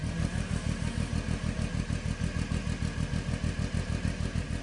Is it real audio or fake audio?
real